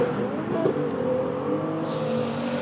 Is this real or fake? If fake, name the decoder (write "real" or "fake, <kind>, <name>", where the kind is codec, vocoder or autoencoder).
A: real